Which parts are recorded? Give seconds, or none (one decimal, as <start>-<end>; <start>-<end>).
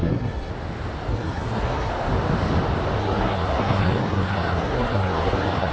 0.5-1.1; 1.9-3.0